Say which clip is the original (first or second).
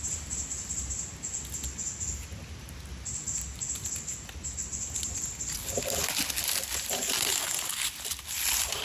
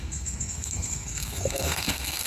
first